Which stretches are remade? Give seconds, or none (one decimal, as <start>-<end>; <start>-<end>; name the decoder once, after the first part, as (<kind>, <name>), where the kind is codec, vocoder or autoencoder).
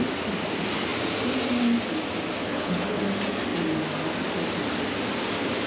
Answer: 2.5-3.0 (codec, HILCodec)